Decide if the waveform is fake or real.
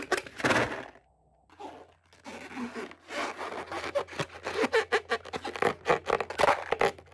real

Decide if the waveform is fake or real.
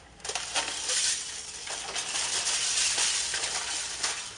fake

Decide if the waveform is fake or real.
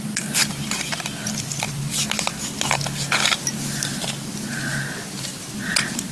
real